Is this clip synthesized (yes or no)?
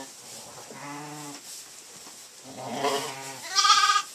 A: no